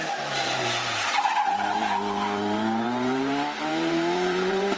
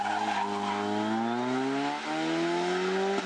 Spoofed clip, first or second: first